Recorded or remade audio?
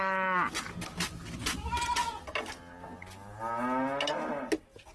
recorded